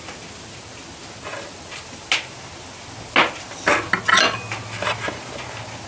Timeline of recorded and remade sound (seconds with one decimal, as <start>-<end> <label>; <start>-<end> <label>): 0.0-5.9 recorded